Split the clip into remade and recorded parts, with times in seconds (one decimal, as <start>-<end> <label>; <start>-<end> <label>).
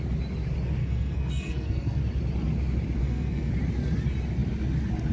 0.0-0.8 recorded; 0.8-2.0 remade; 2.0-3.0 recorded; 3.0-3.5 remade; 3.5-5.1 recorded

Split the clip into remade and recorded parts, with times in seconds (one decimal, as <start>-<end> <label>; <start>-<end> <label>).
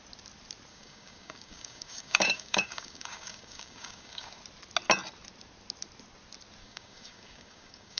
0.0-0.7 recorded; 0.7-4.4 remade; 4.4-6.6 recorded; 6.6-8.0 remade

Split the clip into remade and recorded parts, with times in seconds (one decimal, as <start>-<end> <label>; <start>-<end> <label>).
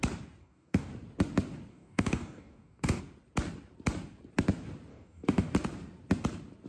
0.0-0.4 recorded; 0.4-0.9 remade; 0.9-1.7 recorded; 1.7-3.0 remade; 3.0-4.9 recorded; 4.9-5.5 remade; 5.5-6.7 recorded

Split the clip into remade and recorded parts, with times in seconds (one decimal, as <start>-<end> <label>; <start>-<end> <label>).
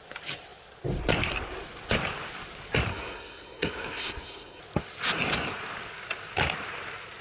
0.0-2.9 recorded; 2.9-4.6 remade; 4.6-7.2 recorded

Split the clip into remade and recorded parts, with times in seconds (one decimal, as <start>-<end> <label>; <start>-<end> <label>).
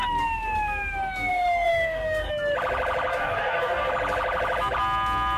0.0-1.3 recorded; 1.3-2.3 remade; 2.3-3.1 recorded; 3.1-3.9 remade; 3.9-5.4 recorded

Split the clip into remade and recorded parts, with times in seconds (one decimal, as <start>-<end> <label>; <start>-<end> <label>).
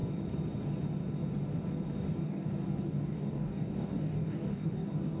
0.0-2.2 recorded; 2.2-5.2 remade